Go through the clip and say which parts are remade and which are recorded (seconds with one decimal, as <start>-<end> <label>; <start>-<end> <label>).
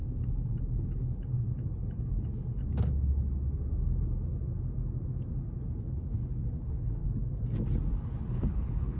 0.0-2.6 remade; 2.6-5.8 recorded; 5.8-7.0 remade; 7.0-7.9 recorded; 7.9-9.0 remade